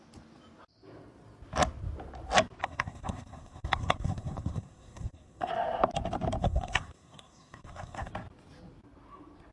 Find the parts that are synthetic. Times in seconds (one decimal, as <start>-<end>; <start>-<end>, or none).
2.6-5.5; 6.4-8.1